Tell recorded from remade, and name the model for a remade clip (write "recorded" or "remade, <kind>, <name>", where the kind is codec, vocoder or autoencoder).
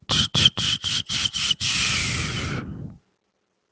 recorded